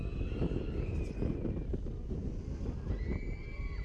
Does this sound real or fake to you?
real